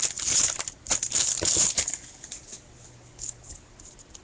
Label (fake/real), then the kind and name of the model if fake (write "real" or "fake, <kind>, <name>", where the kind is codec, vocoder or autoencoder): real